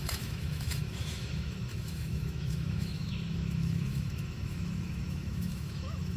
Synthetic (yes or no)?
yes